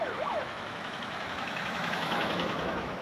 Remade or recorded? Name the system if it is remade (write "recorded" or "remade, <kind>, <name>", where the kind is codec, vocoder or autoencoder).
remade, autoencoder, DAC-VAE